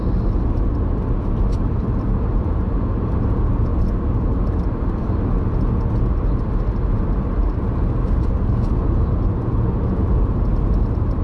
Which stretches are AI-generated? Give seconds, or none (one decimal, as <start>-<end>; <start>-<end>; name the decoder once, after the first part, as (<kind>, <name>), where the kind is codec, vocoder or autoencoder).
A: none